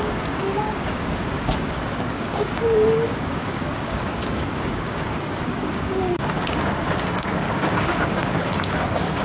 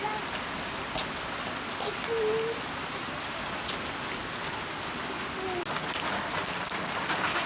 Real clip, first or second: second